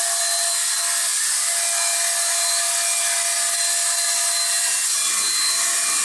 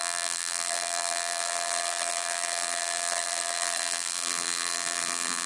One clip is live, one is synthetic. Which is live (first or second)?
first